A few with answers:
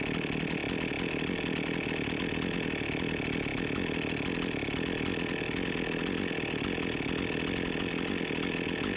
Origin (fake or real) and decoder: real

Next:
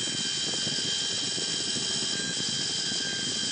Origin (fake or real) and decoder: real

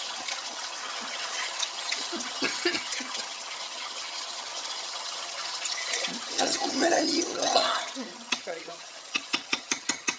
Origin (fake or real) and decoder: fake, vocoder, HiFi-GAN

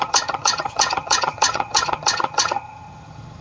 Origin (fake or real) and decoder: fake, vocoder, HiFi-GAN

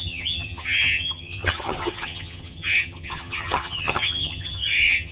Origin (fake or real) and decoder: fake, vocoder, HiFi-GAN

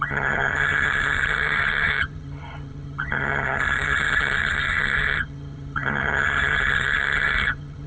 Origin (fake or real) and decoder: fake, vocoder, HiFi-GAN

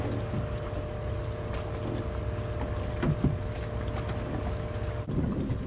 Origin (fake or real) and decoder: real